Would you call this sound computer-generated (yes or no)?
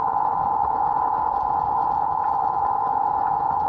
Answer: yes